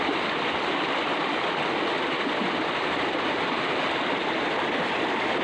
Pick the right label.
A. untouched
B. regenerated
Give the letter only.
A